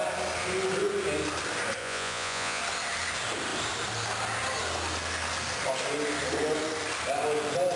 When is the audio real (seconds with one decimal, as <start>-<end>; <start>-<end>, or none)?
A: 0.0-1.8; 2.6-7.8